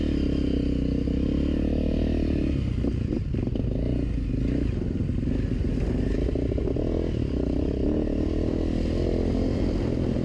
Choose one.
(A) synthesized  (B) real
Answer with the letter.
B